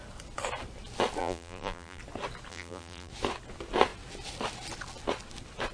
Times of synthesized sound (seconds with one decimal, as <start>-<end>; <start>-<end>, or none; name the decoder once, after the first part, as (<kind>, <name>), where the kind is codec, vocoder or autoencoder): 1.2-2.0 (vocoder, BigVGAN v2); 2.5-3.1